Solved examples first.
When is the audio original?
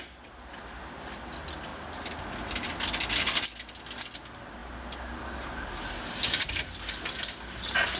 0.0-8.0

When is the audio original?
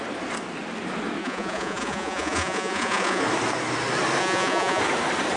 0.0-1.2; 3.2-4.2; 4.8-5.4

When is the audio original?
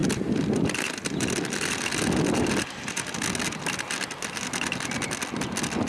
0.0-5.9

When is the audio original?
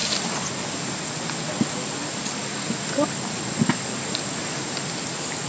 0.0-5.5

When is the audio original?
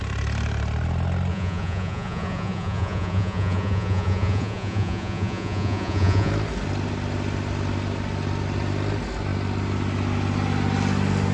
0.0-1.3; 6.3-11.3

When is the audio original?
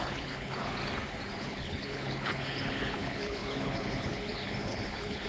0.8-1.4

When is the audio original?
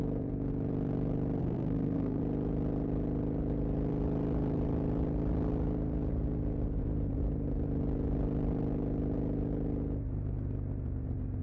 0.0-1.4; 2.2-11.4